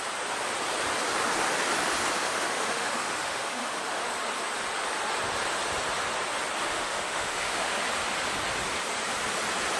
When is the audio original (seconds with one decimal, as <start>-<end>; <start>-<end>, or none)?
0.0-2.2; 4.0-6.6; 7.7-9.8